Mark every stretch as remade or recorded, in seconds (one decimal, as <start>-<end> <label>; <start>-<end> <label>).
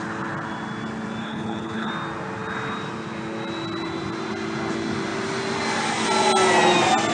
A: 0.0-1.2 recorded; 1.2-1.9 remade; 1.9-7.1 recorded